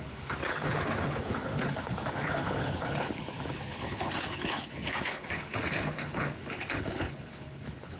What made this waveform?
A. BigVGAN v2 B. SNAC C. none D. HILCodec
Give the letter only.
D